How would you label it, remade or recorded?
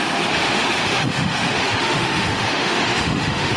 remade